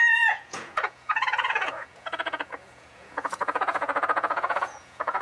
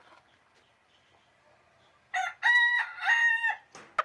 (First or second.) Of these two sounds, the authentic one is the second